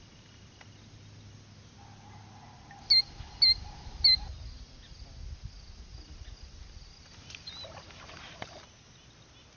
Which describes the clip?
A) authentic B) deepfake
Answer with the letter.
A